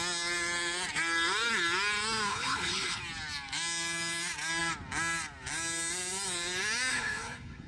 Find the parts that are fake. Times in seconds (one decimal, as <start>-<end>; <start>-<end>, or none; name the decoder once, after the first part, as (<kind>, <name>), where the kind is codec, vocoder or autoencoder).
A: 2.3-3.0 (codec, HILCodec); 6.9-7.7

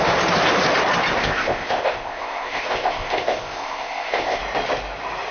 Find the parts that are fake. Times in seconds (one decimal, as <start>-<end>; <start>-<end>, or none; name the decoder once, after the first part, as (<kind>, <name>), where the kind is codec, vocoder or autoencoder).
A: 1.2-4.4 (codec, ZipCodec)

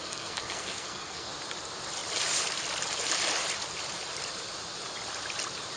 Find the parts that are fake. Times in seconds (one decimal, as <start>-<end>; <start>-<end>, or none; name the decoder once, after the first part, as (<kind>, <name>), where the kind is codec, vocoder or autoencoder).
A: 0.0-1.3 (codec, SNAC)

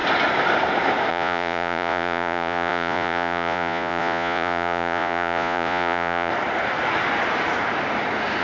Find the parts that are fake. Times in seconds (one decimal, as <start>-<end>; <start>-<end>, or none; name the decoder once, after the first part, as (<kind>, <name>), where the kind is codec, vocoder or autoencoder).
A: 1.1-6.3 (vocoder, Vocos)